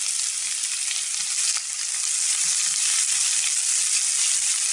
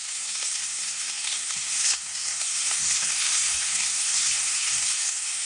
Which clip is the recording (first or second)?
first